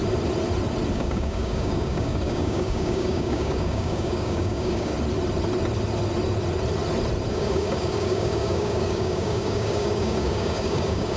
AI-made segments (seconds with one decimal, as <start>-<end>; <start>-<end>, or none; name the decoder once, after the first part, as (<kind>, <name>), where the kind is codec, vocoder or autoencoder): 0.9-4.9 (codec, DAC); 7.3-11.2